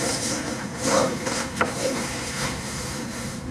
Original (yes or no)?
no